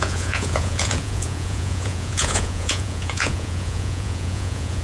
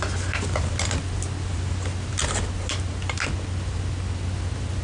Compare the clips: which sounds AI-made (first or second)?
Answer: first